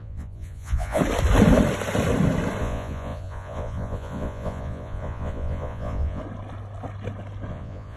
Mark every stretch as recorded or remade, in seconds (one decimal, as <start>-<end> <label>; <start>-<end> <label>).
0.0-1.0 remade; 1.0-2.6 recorded; 2.6-6.2 remade; 6.2-7.5 recorded; 7.5-8.0 remade